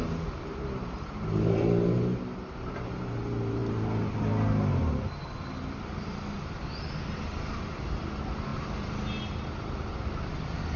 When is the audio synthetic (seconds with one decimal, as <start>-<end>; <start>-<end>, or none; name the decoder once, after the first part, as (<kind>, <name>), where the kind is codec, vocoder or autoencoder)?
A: none